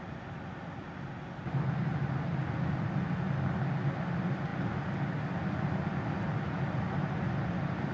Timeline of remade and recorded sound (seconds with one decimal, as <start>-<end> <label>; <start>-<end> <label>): 0.0-7.9 recorded